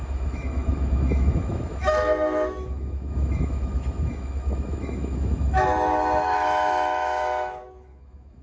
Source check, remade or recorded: remade